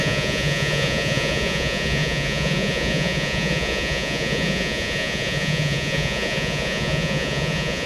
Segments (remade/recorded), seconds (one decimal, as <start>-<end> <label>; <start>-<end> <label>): 0.0-7.9 remade